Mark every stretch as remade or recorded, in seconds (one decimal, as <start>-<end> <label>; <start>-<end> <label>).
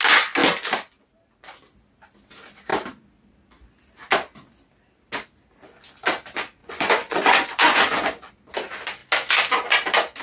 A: 0.0-6.6 recorded; 6.6-8.3 remade; 8.3-10.2 recorded